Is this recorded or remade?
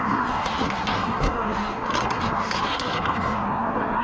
remade